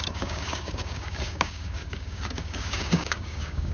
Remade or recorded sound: remade